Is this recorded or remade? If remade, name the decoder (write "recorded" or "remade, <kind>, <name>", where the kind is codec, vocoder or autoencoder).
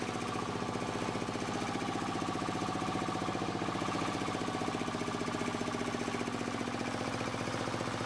recorded